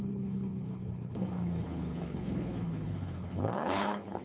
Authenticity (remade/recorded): remade